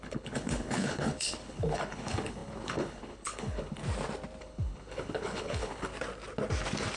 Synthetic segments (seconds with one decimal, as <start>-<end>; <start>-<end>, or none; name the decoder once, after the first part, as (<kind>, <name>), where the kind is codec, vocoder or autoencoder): 0.0-3.8 (codec, HILCodec); 4.4-5.9